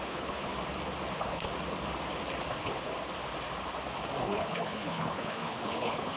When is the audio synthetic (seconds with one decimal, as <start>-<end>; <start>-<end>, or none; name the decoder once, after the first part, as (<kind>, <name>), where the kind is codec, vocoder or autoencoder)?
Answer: 0.0-0.5 (codec, HILCodec); 1.1-1.5; 2.5-2.9; 4.2-6.2